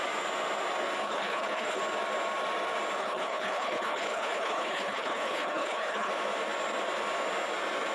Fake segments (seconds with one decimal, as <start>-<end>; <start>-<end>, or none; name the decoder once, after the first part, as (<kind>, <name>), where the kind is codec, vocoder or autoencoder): 1.0-1.8 (codec, HILCodec); 3.0-6.1